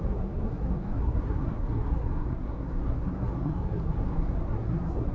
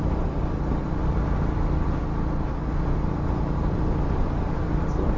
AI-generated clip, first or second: first